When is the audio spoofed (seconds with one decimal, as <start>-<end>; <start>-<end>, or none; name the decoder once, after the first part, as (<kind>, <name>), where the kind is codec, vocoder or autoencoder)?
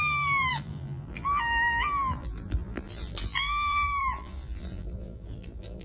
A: 0.0-5.8 (vocoder, BigVGAN v2)